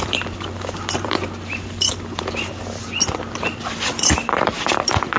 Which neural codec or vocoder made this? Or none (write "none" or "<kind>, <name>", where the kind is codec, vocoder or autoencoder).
vocoder, BigVGAN v2